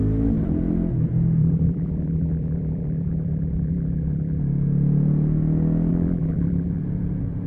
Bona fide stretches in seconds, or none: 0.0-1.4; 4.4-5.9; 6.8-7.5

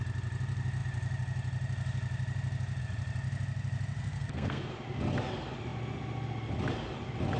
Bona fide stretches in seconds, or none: 0.0-4.1; 4.7-7.4

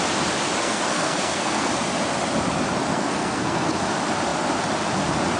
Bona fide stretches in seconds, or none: 0.0-0.6; 1.7-2.9; 3.7-5.4

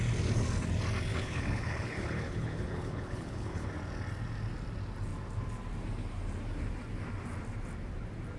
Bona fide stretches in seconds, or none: 0.0-1.1; 3.7-8.4